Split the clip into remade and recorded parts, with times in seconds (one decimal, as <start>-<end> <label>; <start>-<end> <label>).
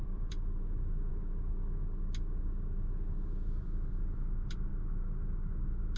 0.0-1.1 remade; 1.1-3.6 recorded; 3.6-4.7 remade; 4.7-6.0 recorded